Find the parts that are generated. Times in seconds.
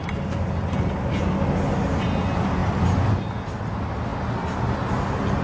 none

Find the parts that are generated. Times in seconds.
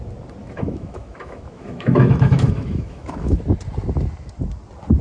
0.4-3.4 (autoencoder, DAC-VAE)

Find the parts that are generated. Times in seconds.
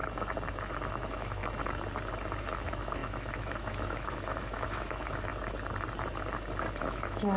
0.9-1.4 (autoencoder, DAC-VAE); 2.4-5.3; 6.8-7.4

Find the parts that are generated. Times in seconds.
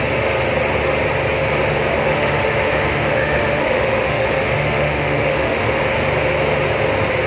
1.9-5.8 (autoencoder, DAC-VAE)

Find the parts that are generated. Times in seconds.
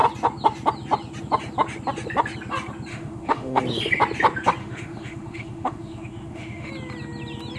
2.9-3.6 (autoencoder, DAC-VAE); 4.6-6.7